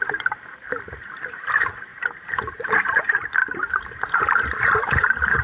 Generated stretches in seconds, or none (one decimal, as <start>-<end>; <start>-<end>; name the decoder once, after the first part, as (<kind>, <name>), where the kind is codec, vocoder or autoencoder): 1.9-2.8 (vocoder, BigVGAN v2); 3.4-4.3